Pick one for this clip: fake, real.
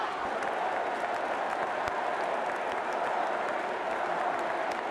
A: real